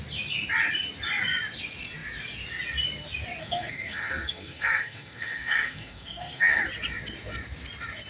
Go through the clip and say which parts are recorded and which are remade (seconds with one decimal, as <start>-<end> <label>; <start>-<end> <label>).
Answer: 0.0-3.4 recorded; 3.4-6.6 remade; 6.6-8.1 recorded